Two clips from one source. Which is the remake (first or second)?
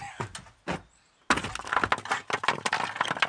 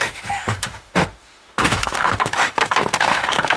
second